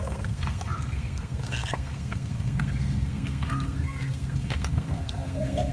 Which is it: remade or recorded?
remade